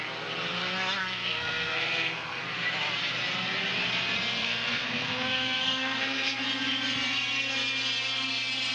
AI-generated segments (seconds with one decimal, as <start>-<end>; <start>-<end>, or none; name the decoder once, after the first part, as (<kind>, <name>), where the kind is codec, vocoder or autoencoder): 1.0-2.4 (codec, SNAC); 4.4-6.4